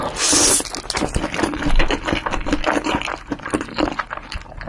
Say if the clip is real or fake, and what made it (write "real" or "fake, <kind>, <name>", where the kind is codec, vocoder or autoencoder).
real